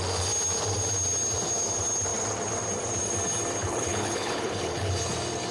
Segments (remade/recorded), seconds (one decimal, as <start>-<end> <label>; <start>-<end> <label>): 0.0-3.6 recorded; 3.6-4.9 remade; 4.9-5.5 recorded

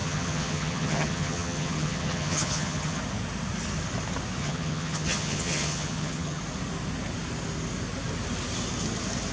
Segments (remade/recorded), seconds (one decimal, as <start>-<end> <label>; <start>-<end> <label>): 0.0-3.0 remade; 3.0-4.4 recorded; 4.4-6.4 remade; 6.4-9.3 recorded

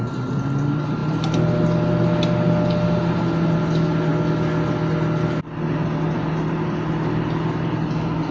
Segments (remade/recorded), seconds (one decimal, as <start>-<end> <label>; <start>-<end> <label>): 0.0-8.3 recorded

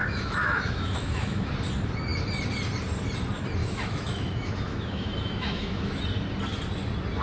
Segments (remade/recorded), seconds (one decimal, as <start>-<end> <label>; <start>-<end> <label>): 0.0-1.5 remade; 1.5-3.6 recorded; 3.6-6.0 remade; 6.0-7.2 recorded